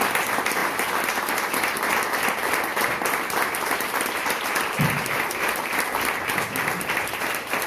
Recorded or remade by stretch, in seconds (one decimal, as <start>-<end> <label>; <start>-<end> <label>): 0.0-0.6 remade; 0.6-1.6 recorded; 1.6-2.7 remade; 2.7-3.3 recorded; 3.3-7.7 remade